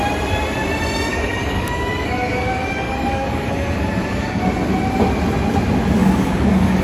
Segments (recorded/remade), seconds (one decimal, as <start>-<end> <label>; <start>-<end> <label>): 0.0-1.1 recorded; 1.1-4.4 remade; 4.4-6.0 recorded; 6.0-6.8 remade